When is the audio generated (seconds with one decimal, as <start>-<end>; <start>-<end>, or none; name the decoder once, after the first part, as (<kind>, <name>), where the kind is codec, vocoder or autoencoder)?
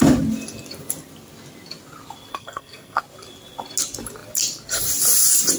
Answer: 2.3-3.0 (codec, SNAC)